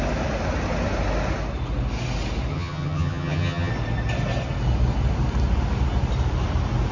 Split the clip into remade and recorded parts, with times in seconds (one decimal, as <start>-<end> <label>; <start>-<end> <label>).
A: 0.0-2.5 recorded; 2.5-3.7 remade; 3.7-6.9 recorded